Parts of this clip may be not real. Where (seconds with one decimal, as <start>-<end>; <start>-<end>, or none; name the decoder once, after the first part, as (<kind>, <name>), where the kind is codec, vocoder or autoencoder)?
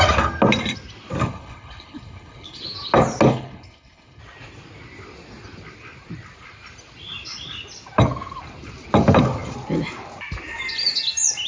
1.2-2.6 (codec, HILCodec); 3.3-4.2